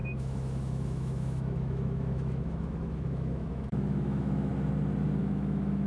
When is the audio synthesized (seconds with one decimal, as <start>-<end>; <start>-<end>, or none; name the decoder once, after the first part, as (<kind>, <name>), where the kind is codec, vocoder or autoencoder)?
0.0-4.5 (autoencoder, DAC-VAE); 5.2-5.9

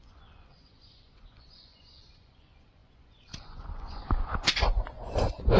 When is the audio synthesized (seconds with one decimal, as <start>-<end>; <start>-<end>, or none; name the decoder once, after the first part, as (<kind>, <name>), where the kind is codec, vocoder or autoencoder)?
0.0-5.6 (vocoder, Vocos)

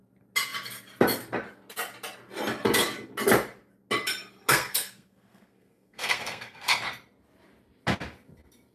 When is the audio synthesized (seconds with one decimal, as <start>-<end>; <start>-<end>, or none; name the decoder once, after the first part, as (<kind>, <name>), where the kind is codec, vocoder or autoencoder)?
4.5-6.8 (codec, SNAC)

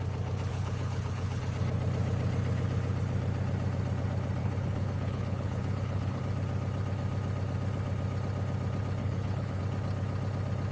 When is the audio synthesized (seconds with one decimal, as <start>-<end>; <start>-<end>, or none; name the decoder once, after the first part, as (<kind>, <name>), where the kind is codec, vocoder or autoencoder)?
0.5-1.4 (codec, HILCodec); 4.4-6.2; 9.0-9.6

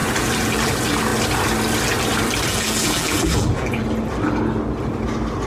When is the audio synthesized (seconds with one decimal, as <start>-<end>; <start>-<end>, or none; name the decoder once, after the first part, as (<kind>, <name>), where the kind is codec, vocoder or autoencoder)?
0.0-0.7 (vocoder, BigVGAN v2); 2.5-3.8

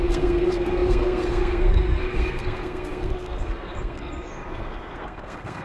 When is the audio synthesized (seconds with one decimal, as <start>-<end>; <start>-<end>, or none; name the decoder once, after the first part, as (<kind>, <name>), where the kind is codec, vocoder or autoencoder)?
0.0-5.6 (codec, SNAC)